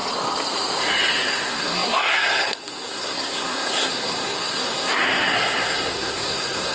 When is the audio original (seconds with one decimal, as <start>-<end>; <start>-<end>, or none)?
0.0-1.1